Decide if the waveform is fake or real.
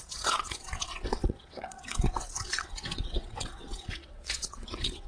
fake